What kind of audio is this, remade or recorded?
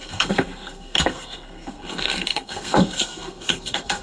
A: remade